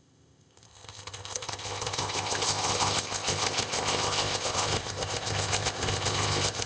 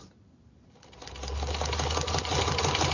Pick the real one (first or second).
second